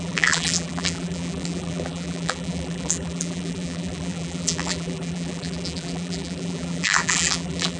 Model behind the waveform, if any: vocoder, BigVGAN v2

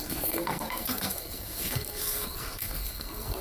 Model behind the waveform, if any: codec, SNAC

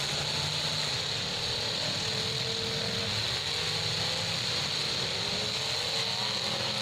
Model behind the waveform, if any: none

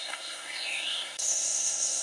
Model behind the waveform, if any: codec, SNAC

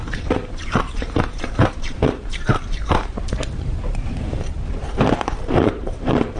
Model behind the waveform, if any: vocoder, BigVGAN v2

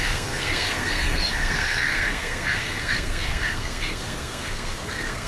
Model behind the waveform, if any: codec, SNAC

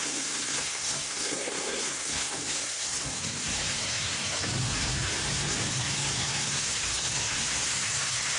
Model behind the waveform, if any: codec, SNAC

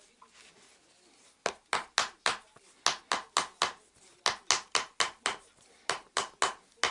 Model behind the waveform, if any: none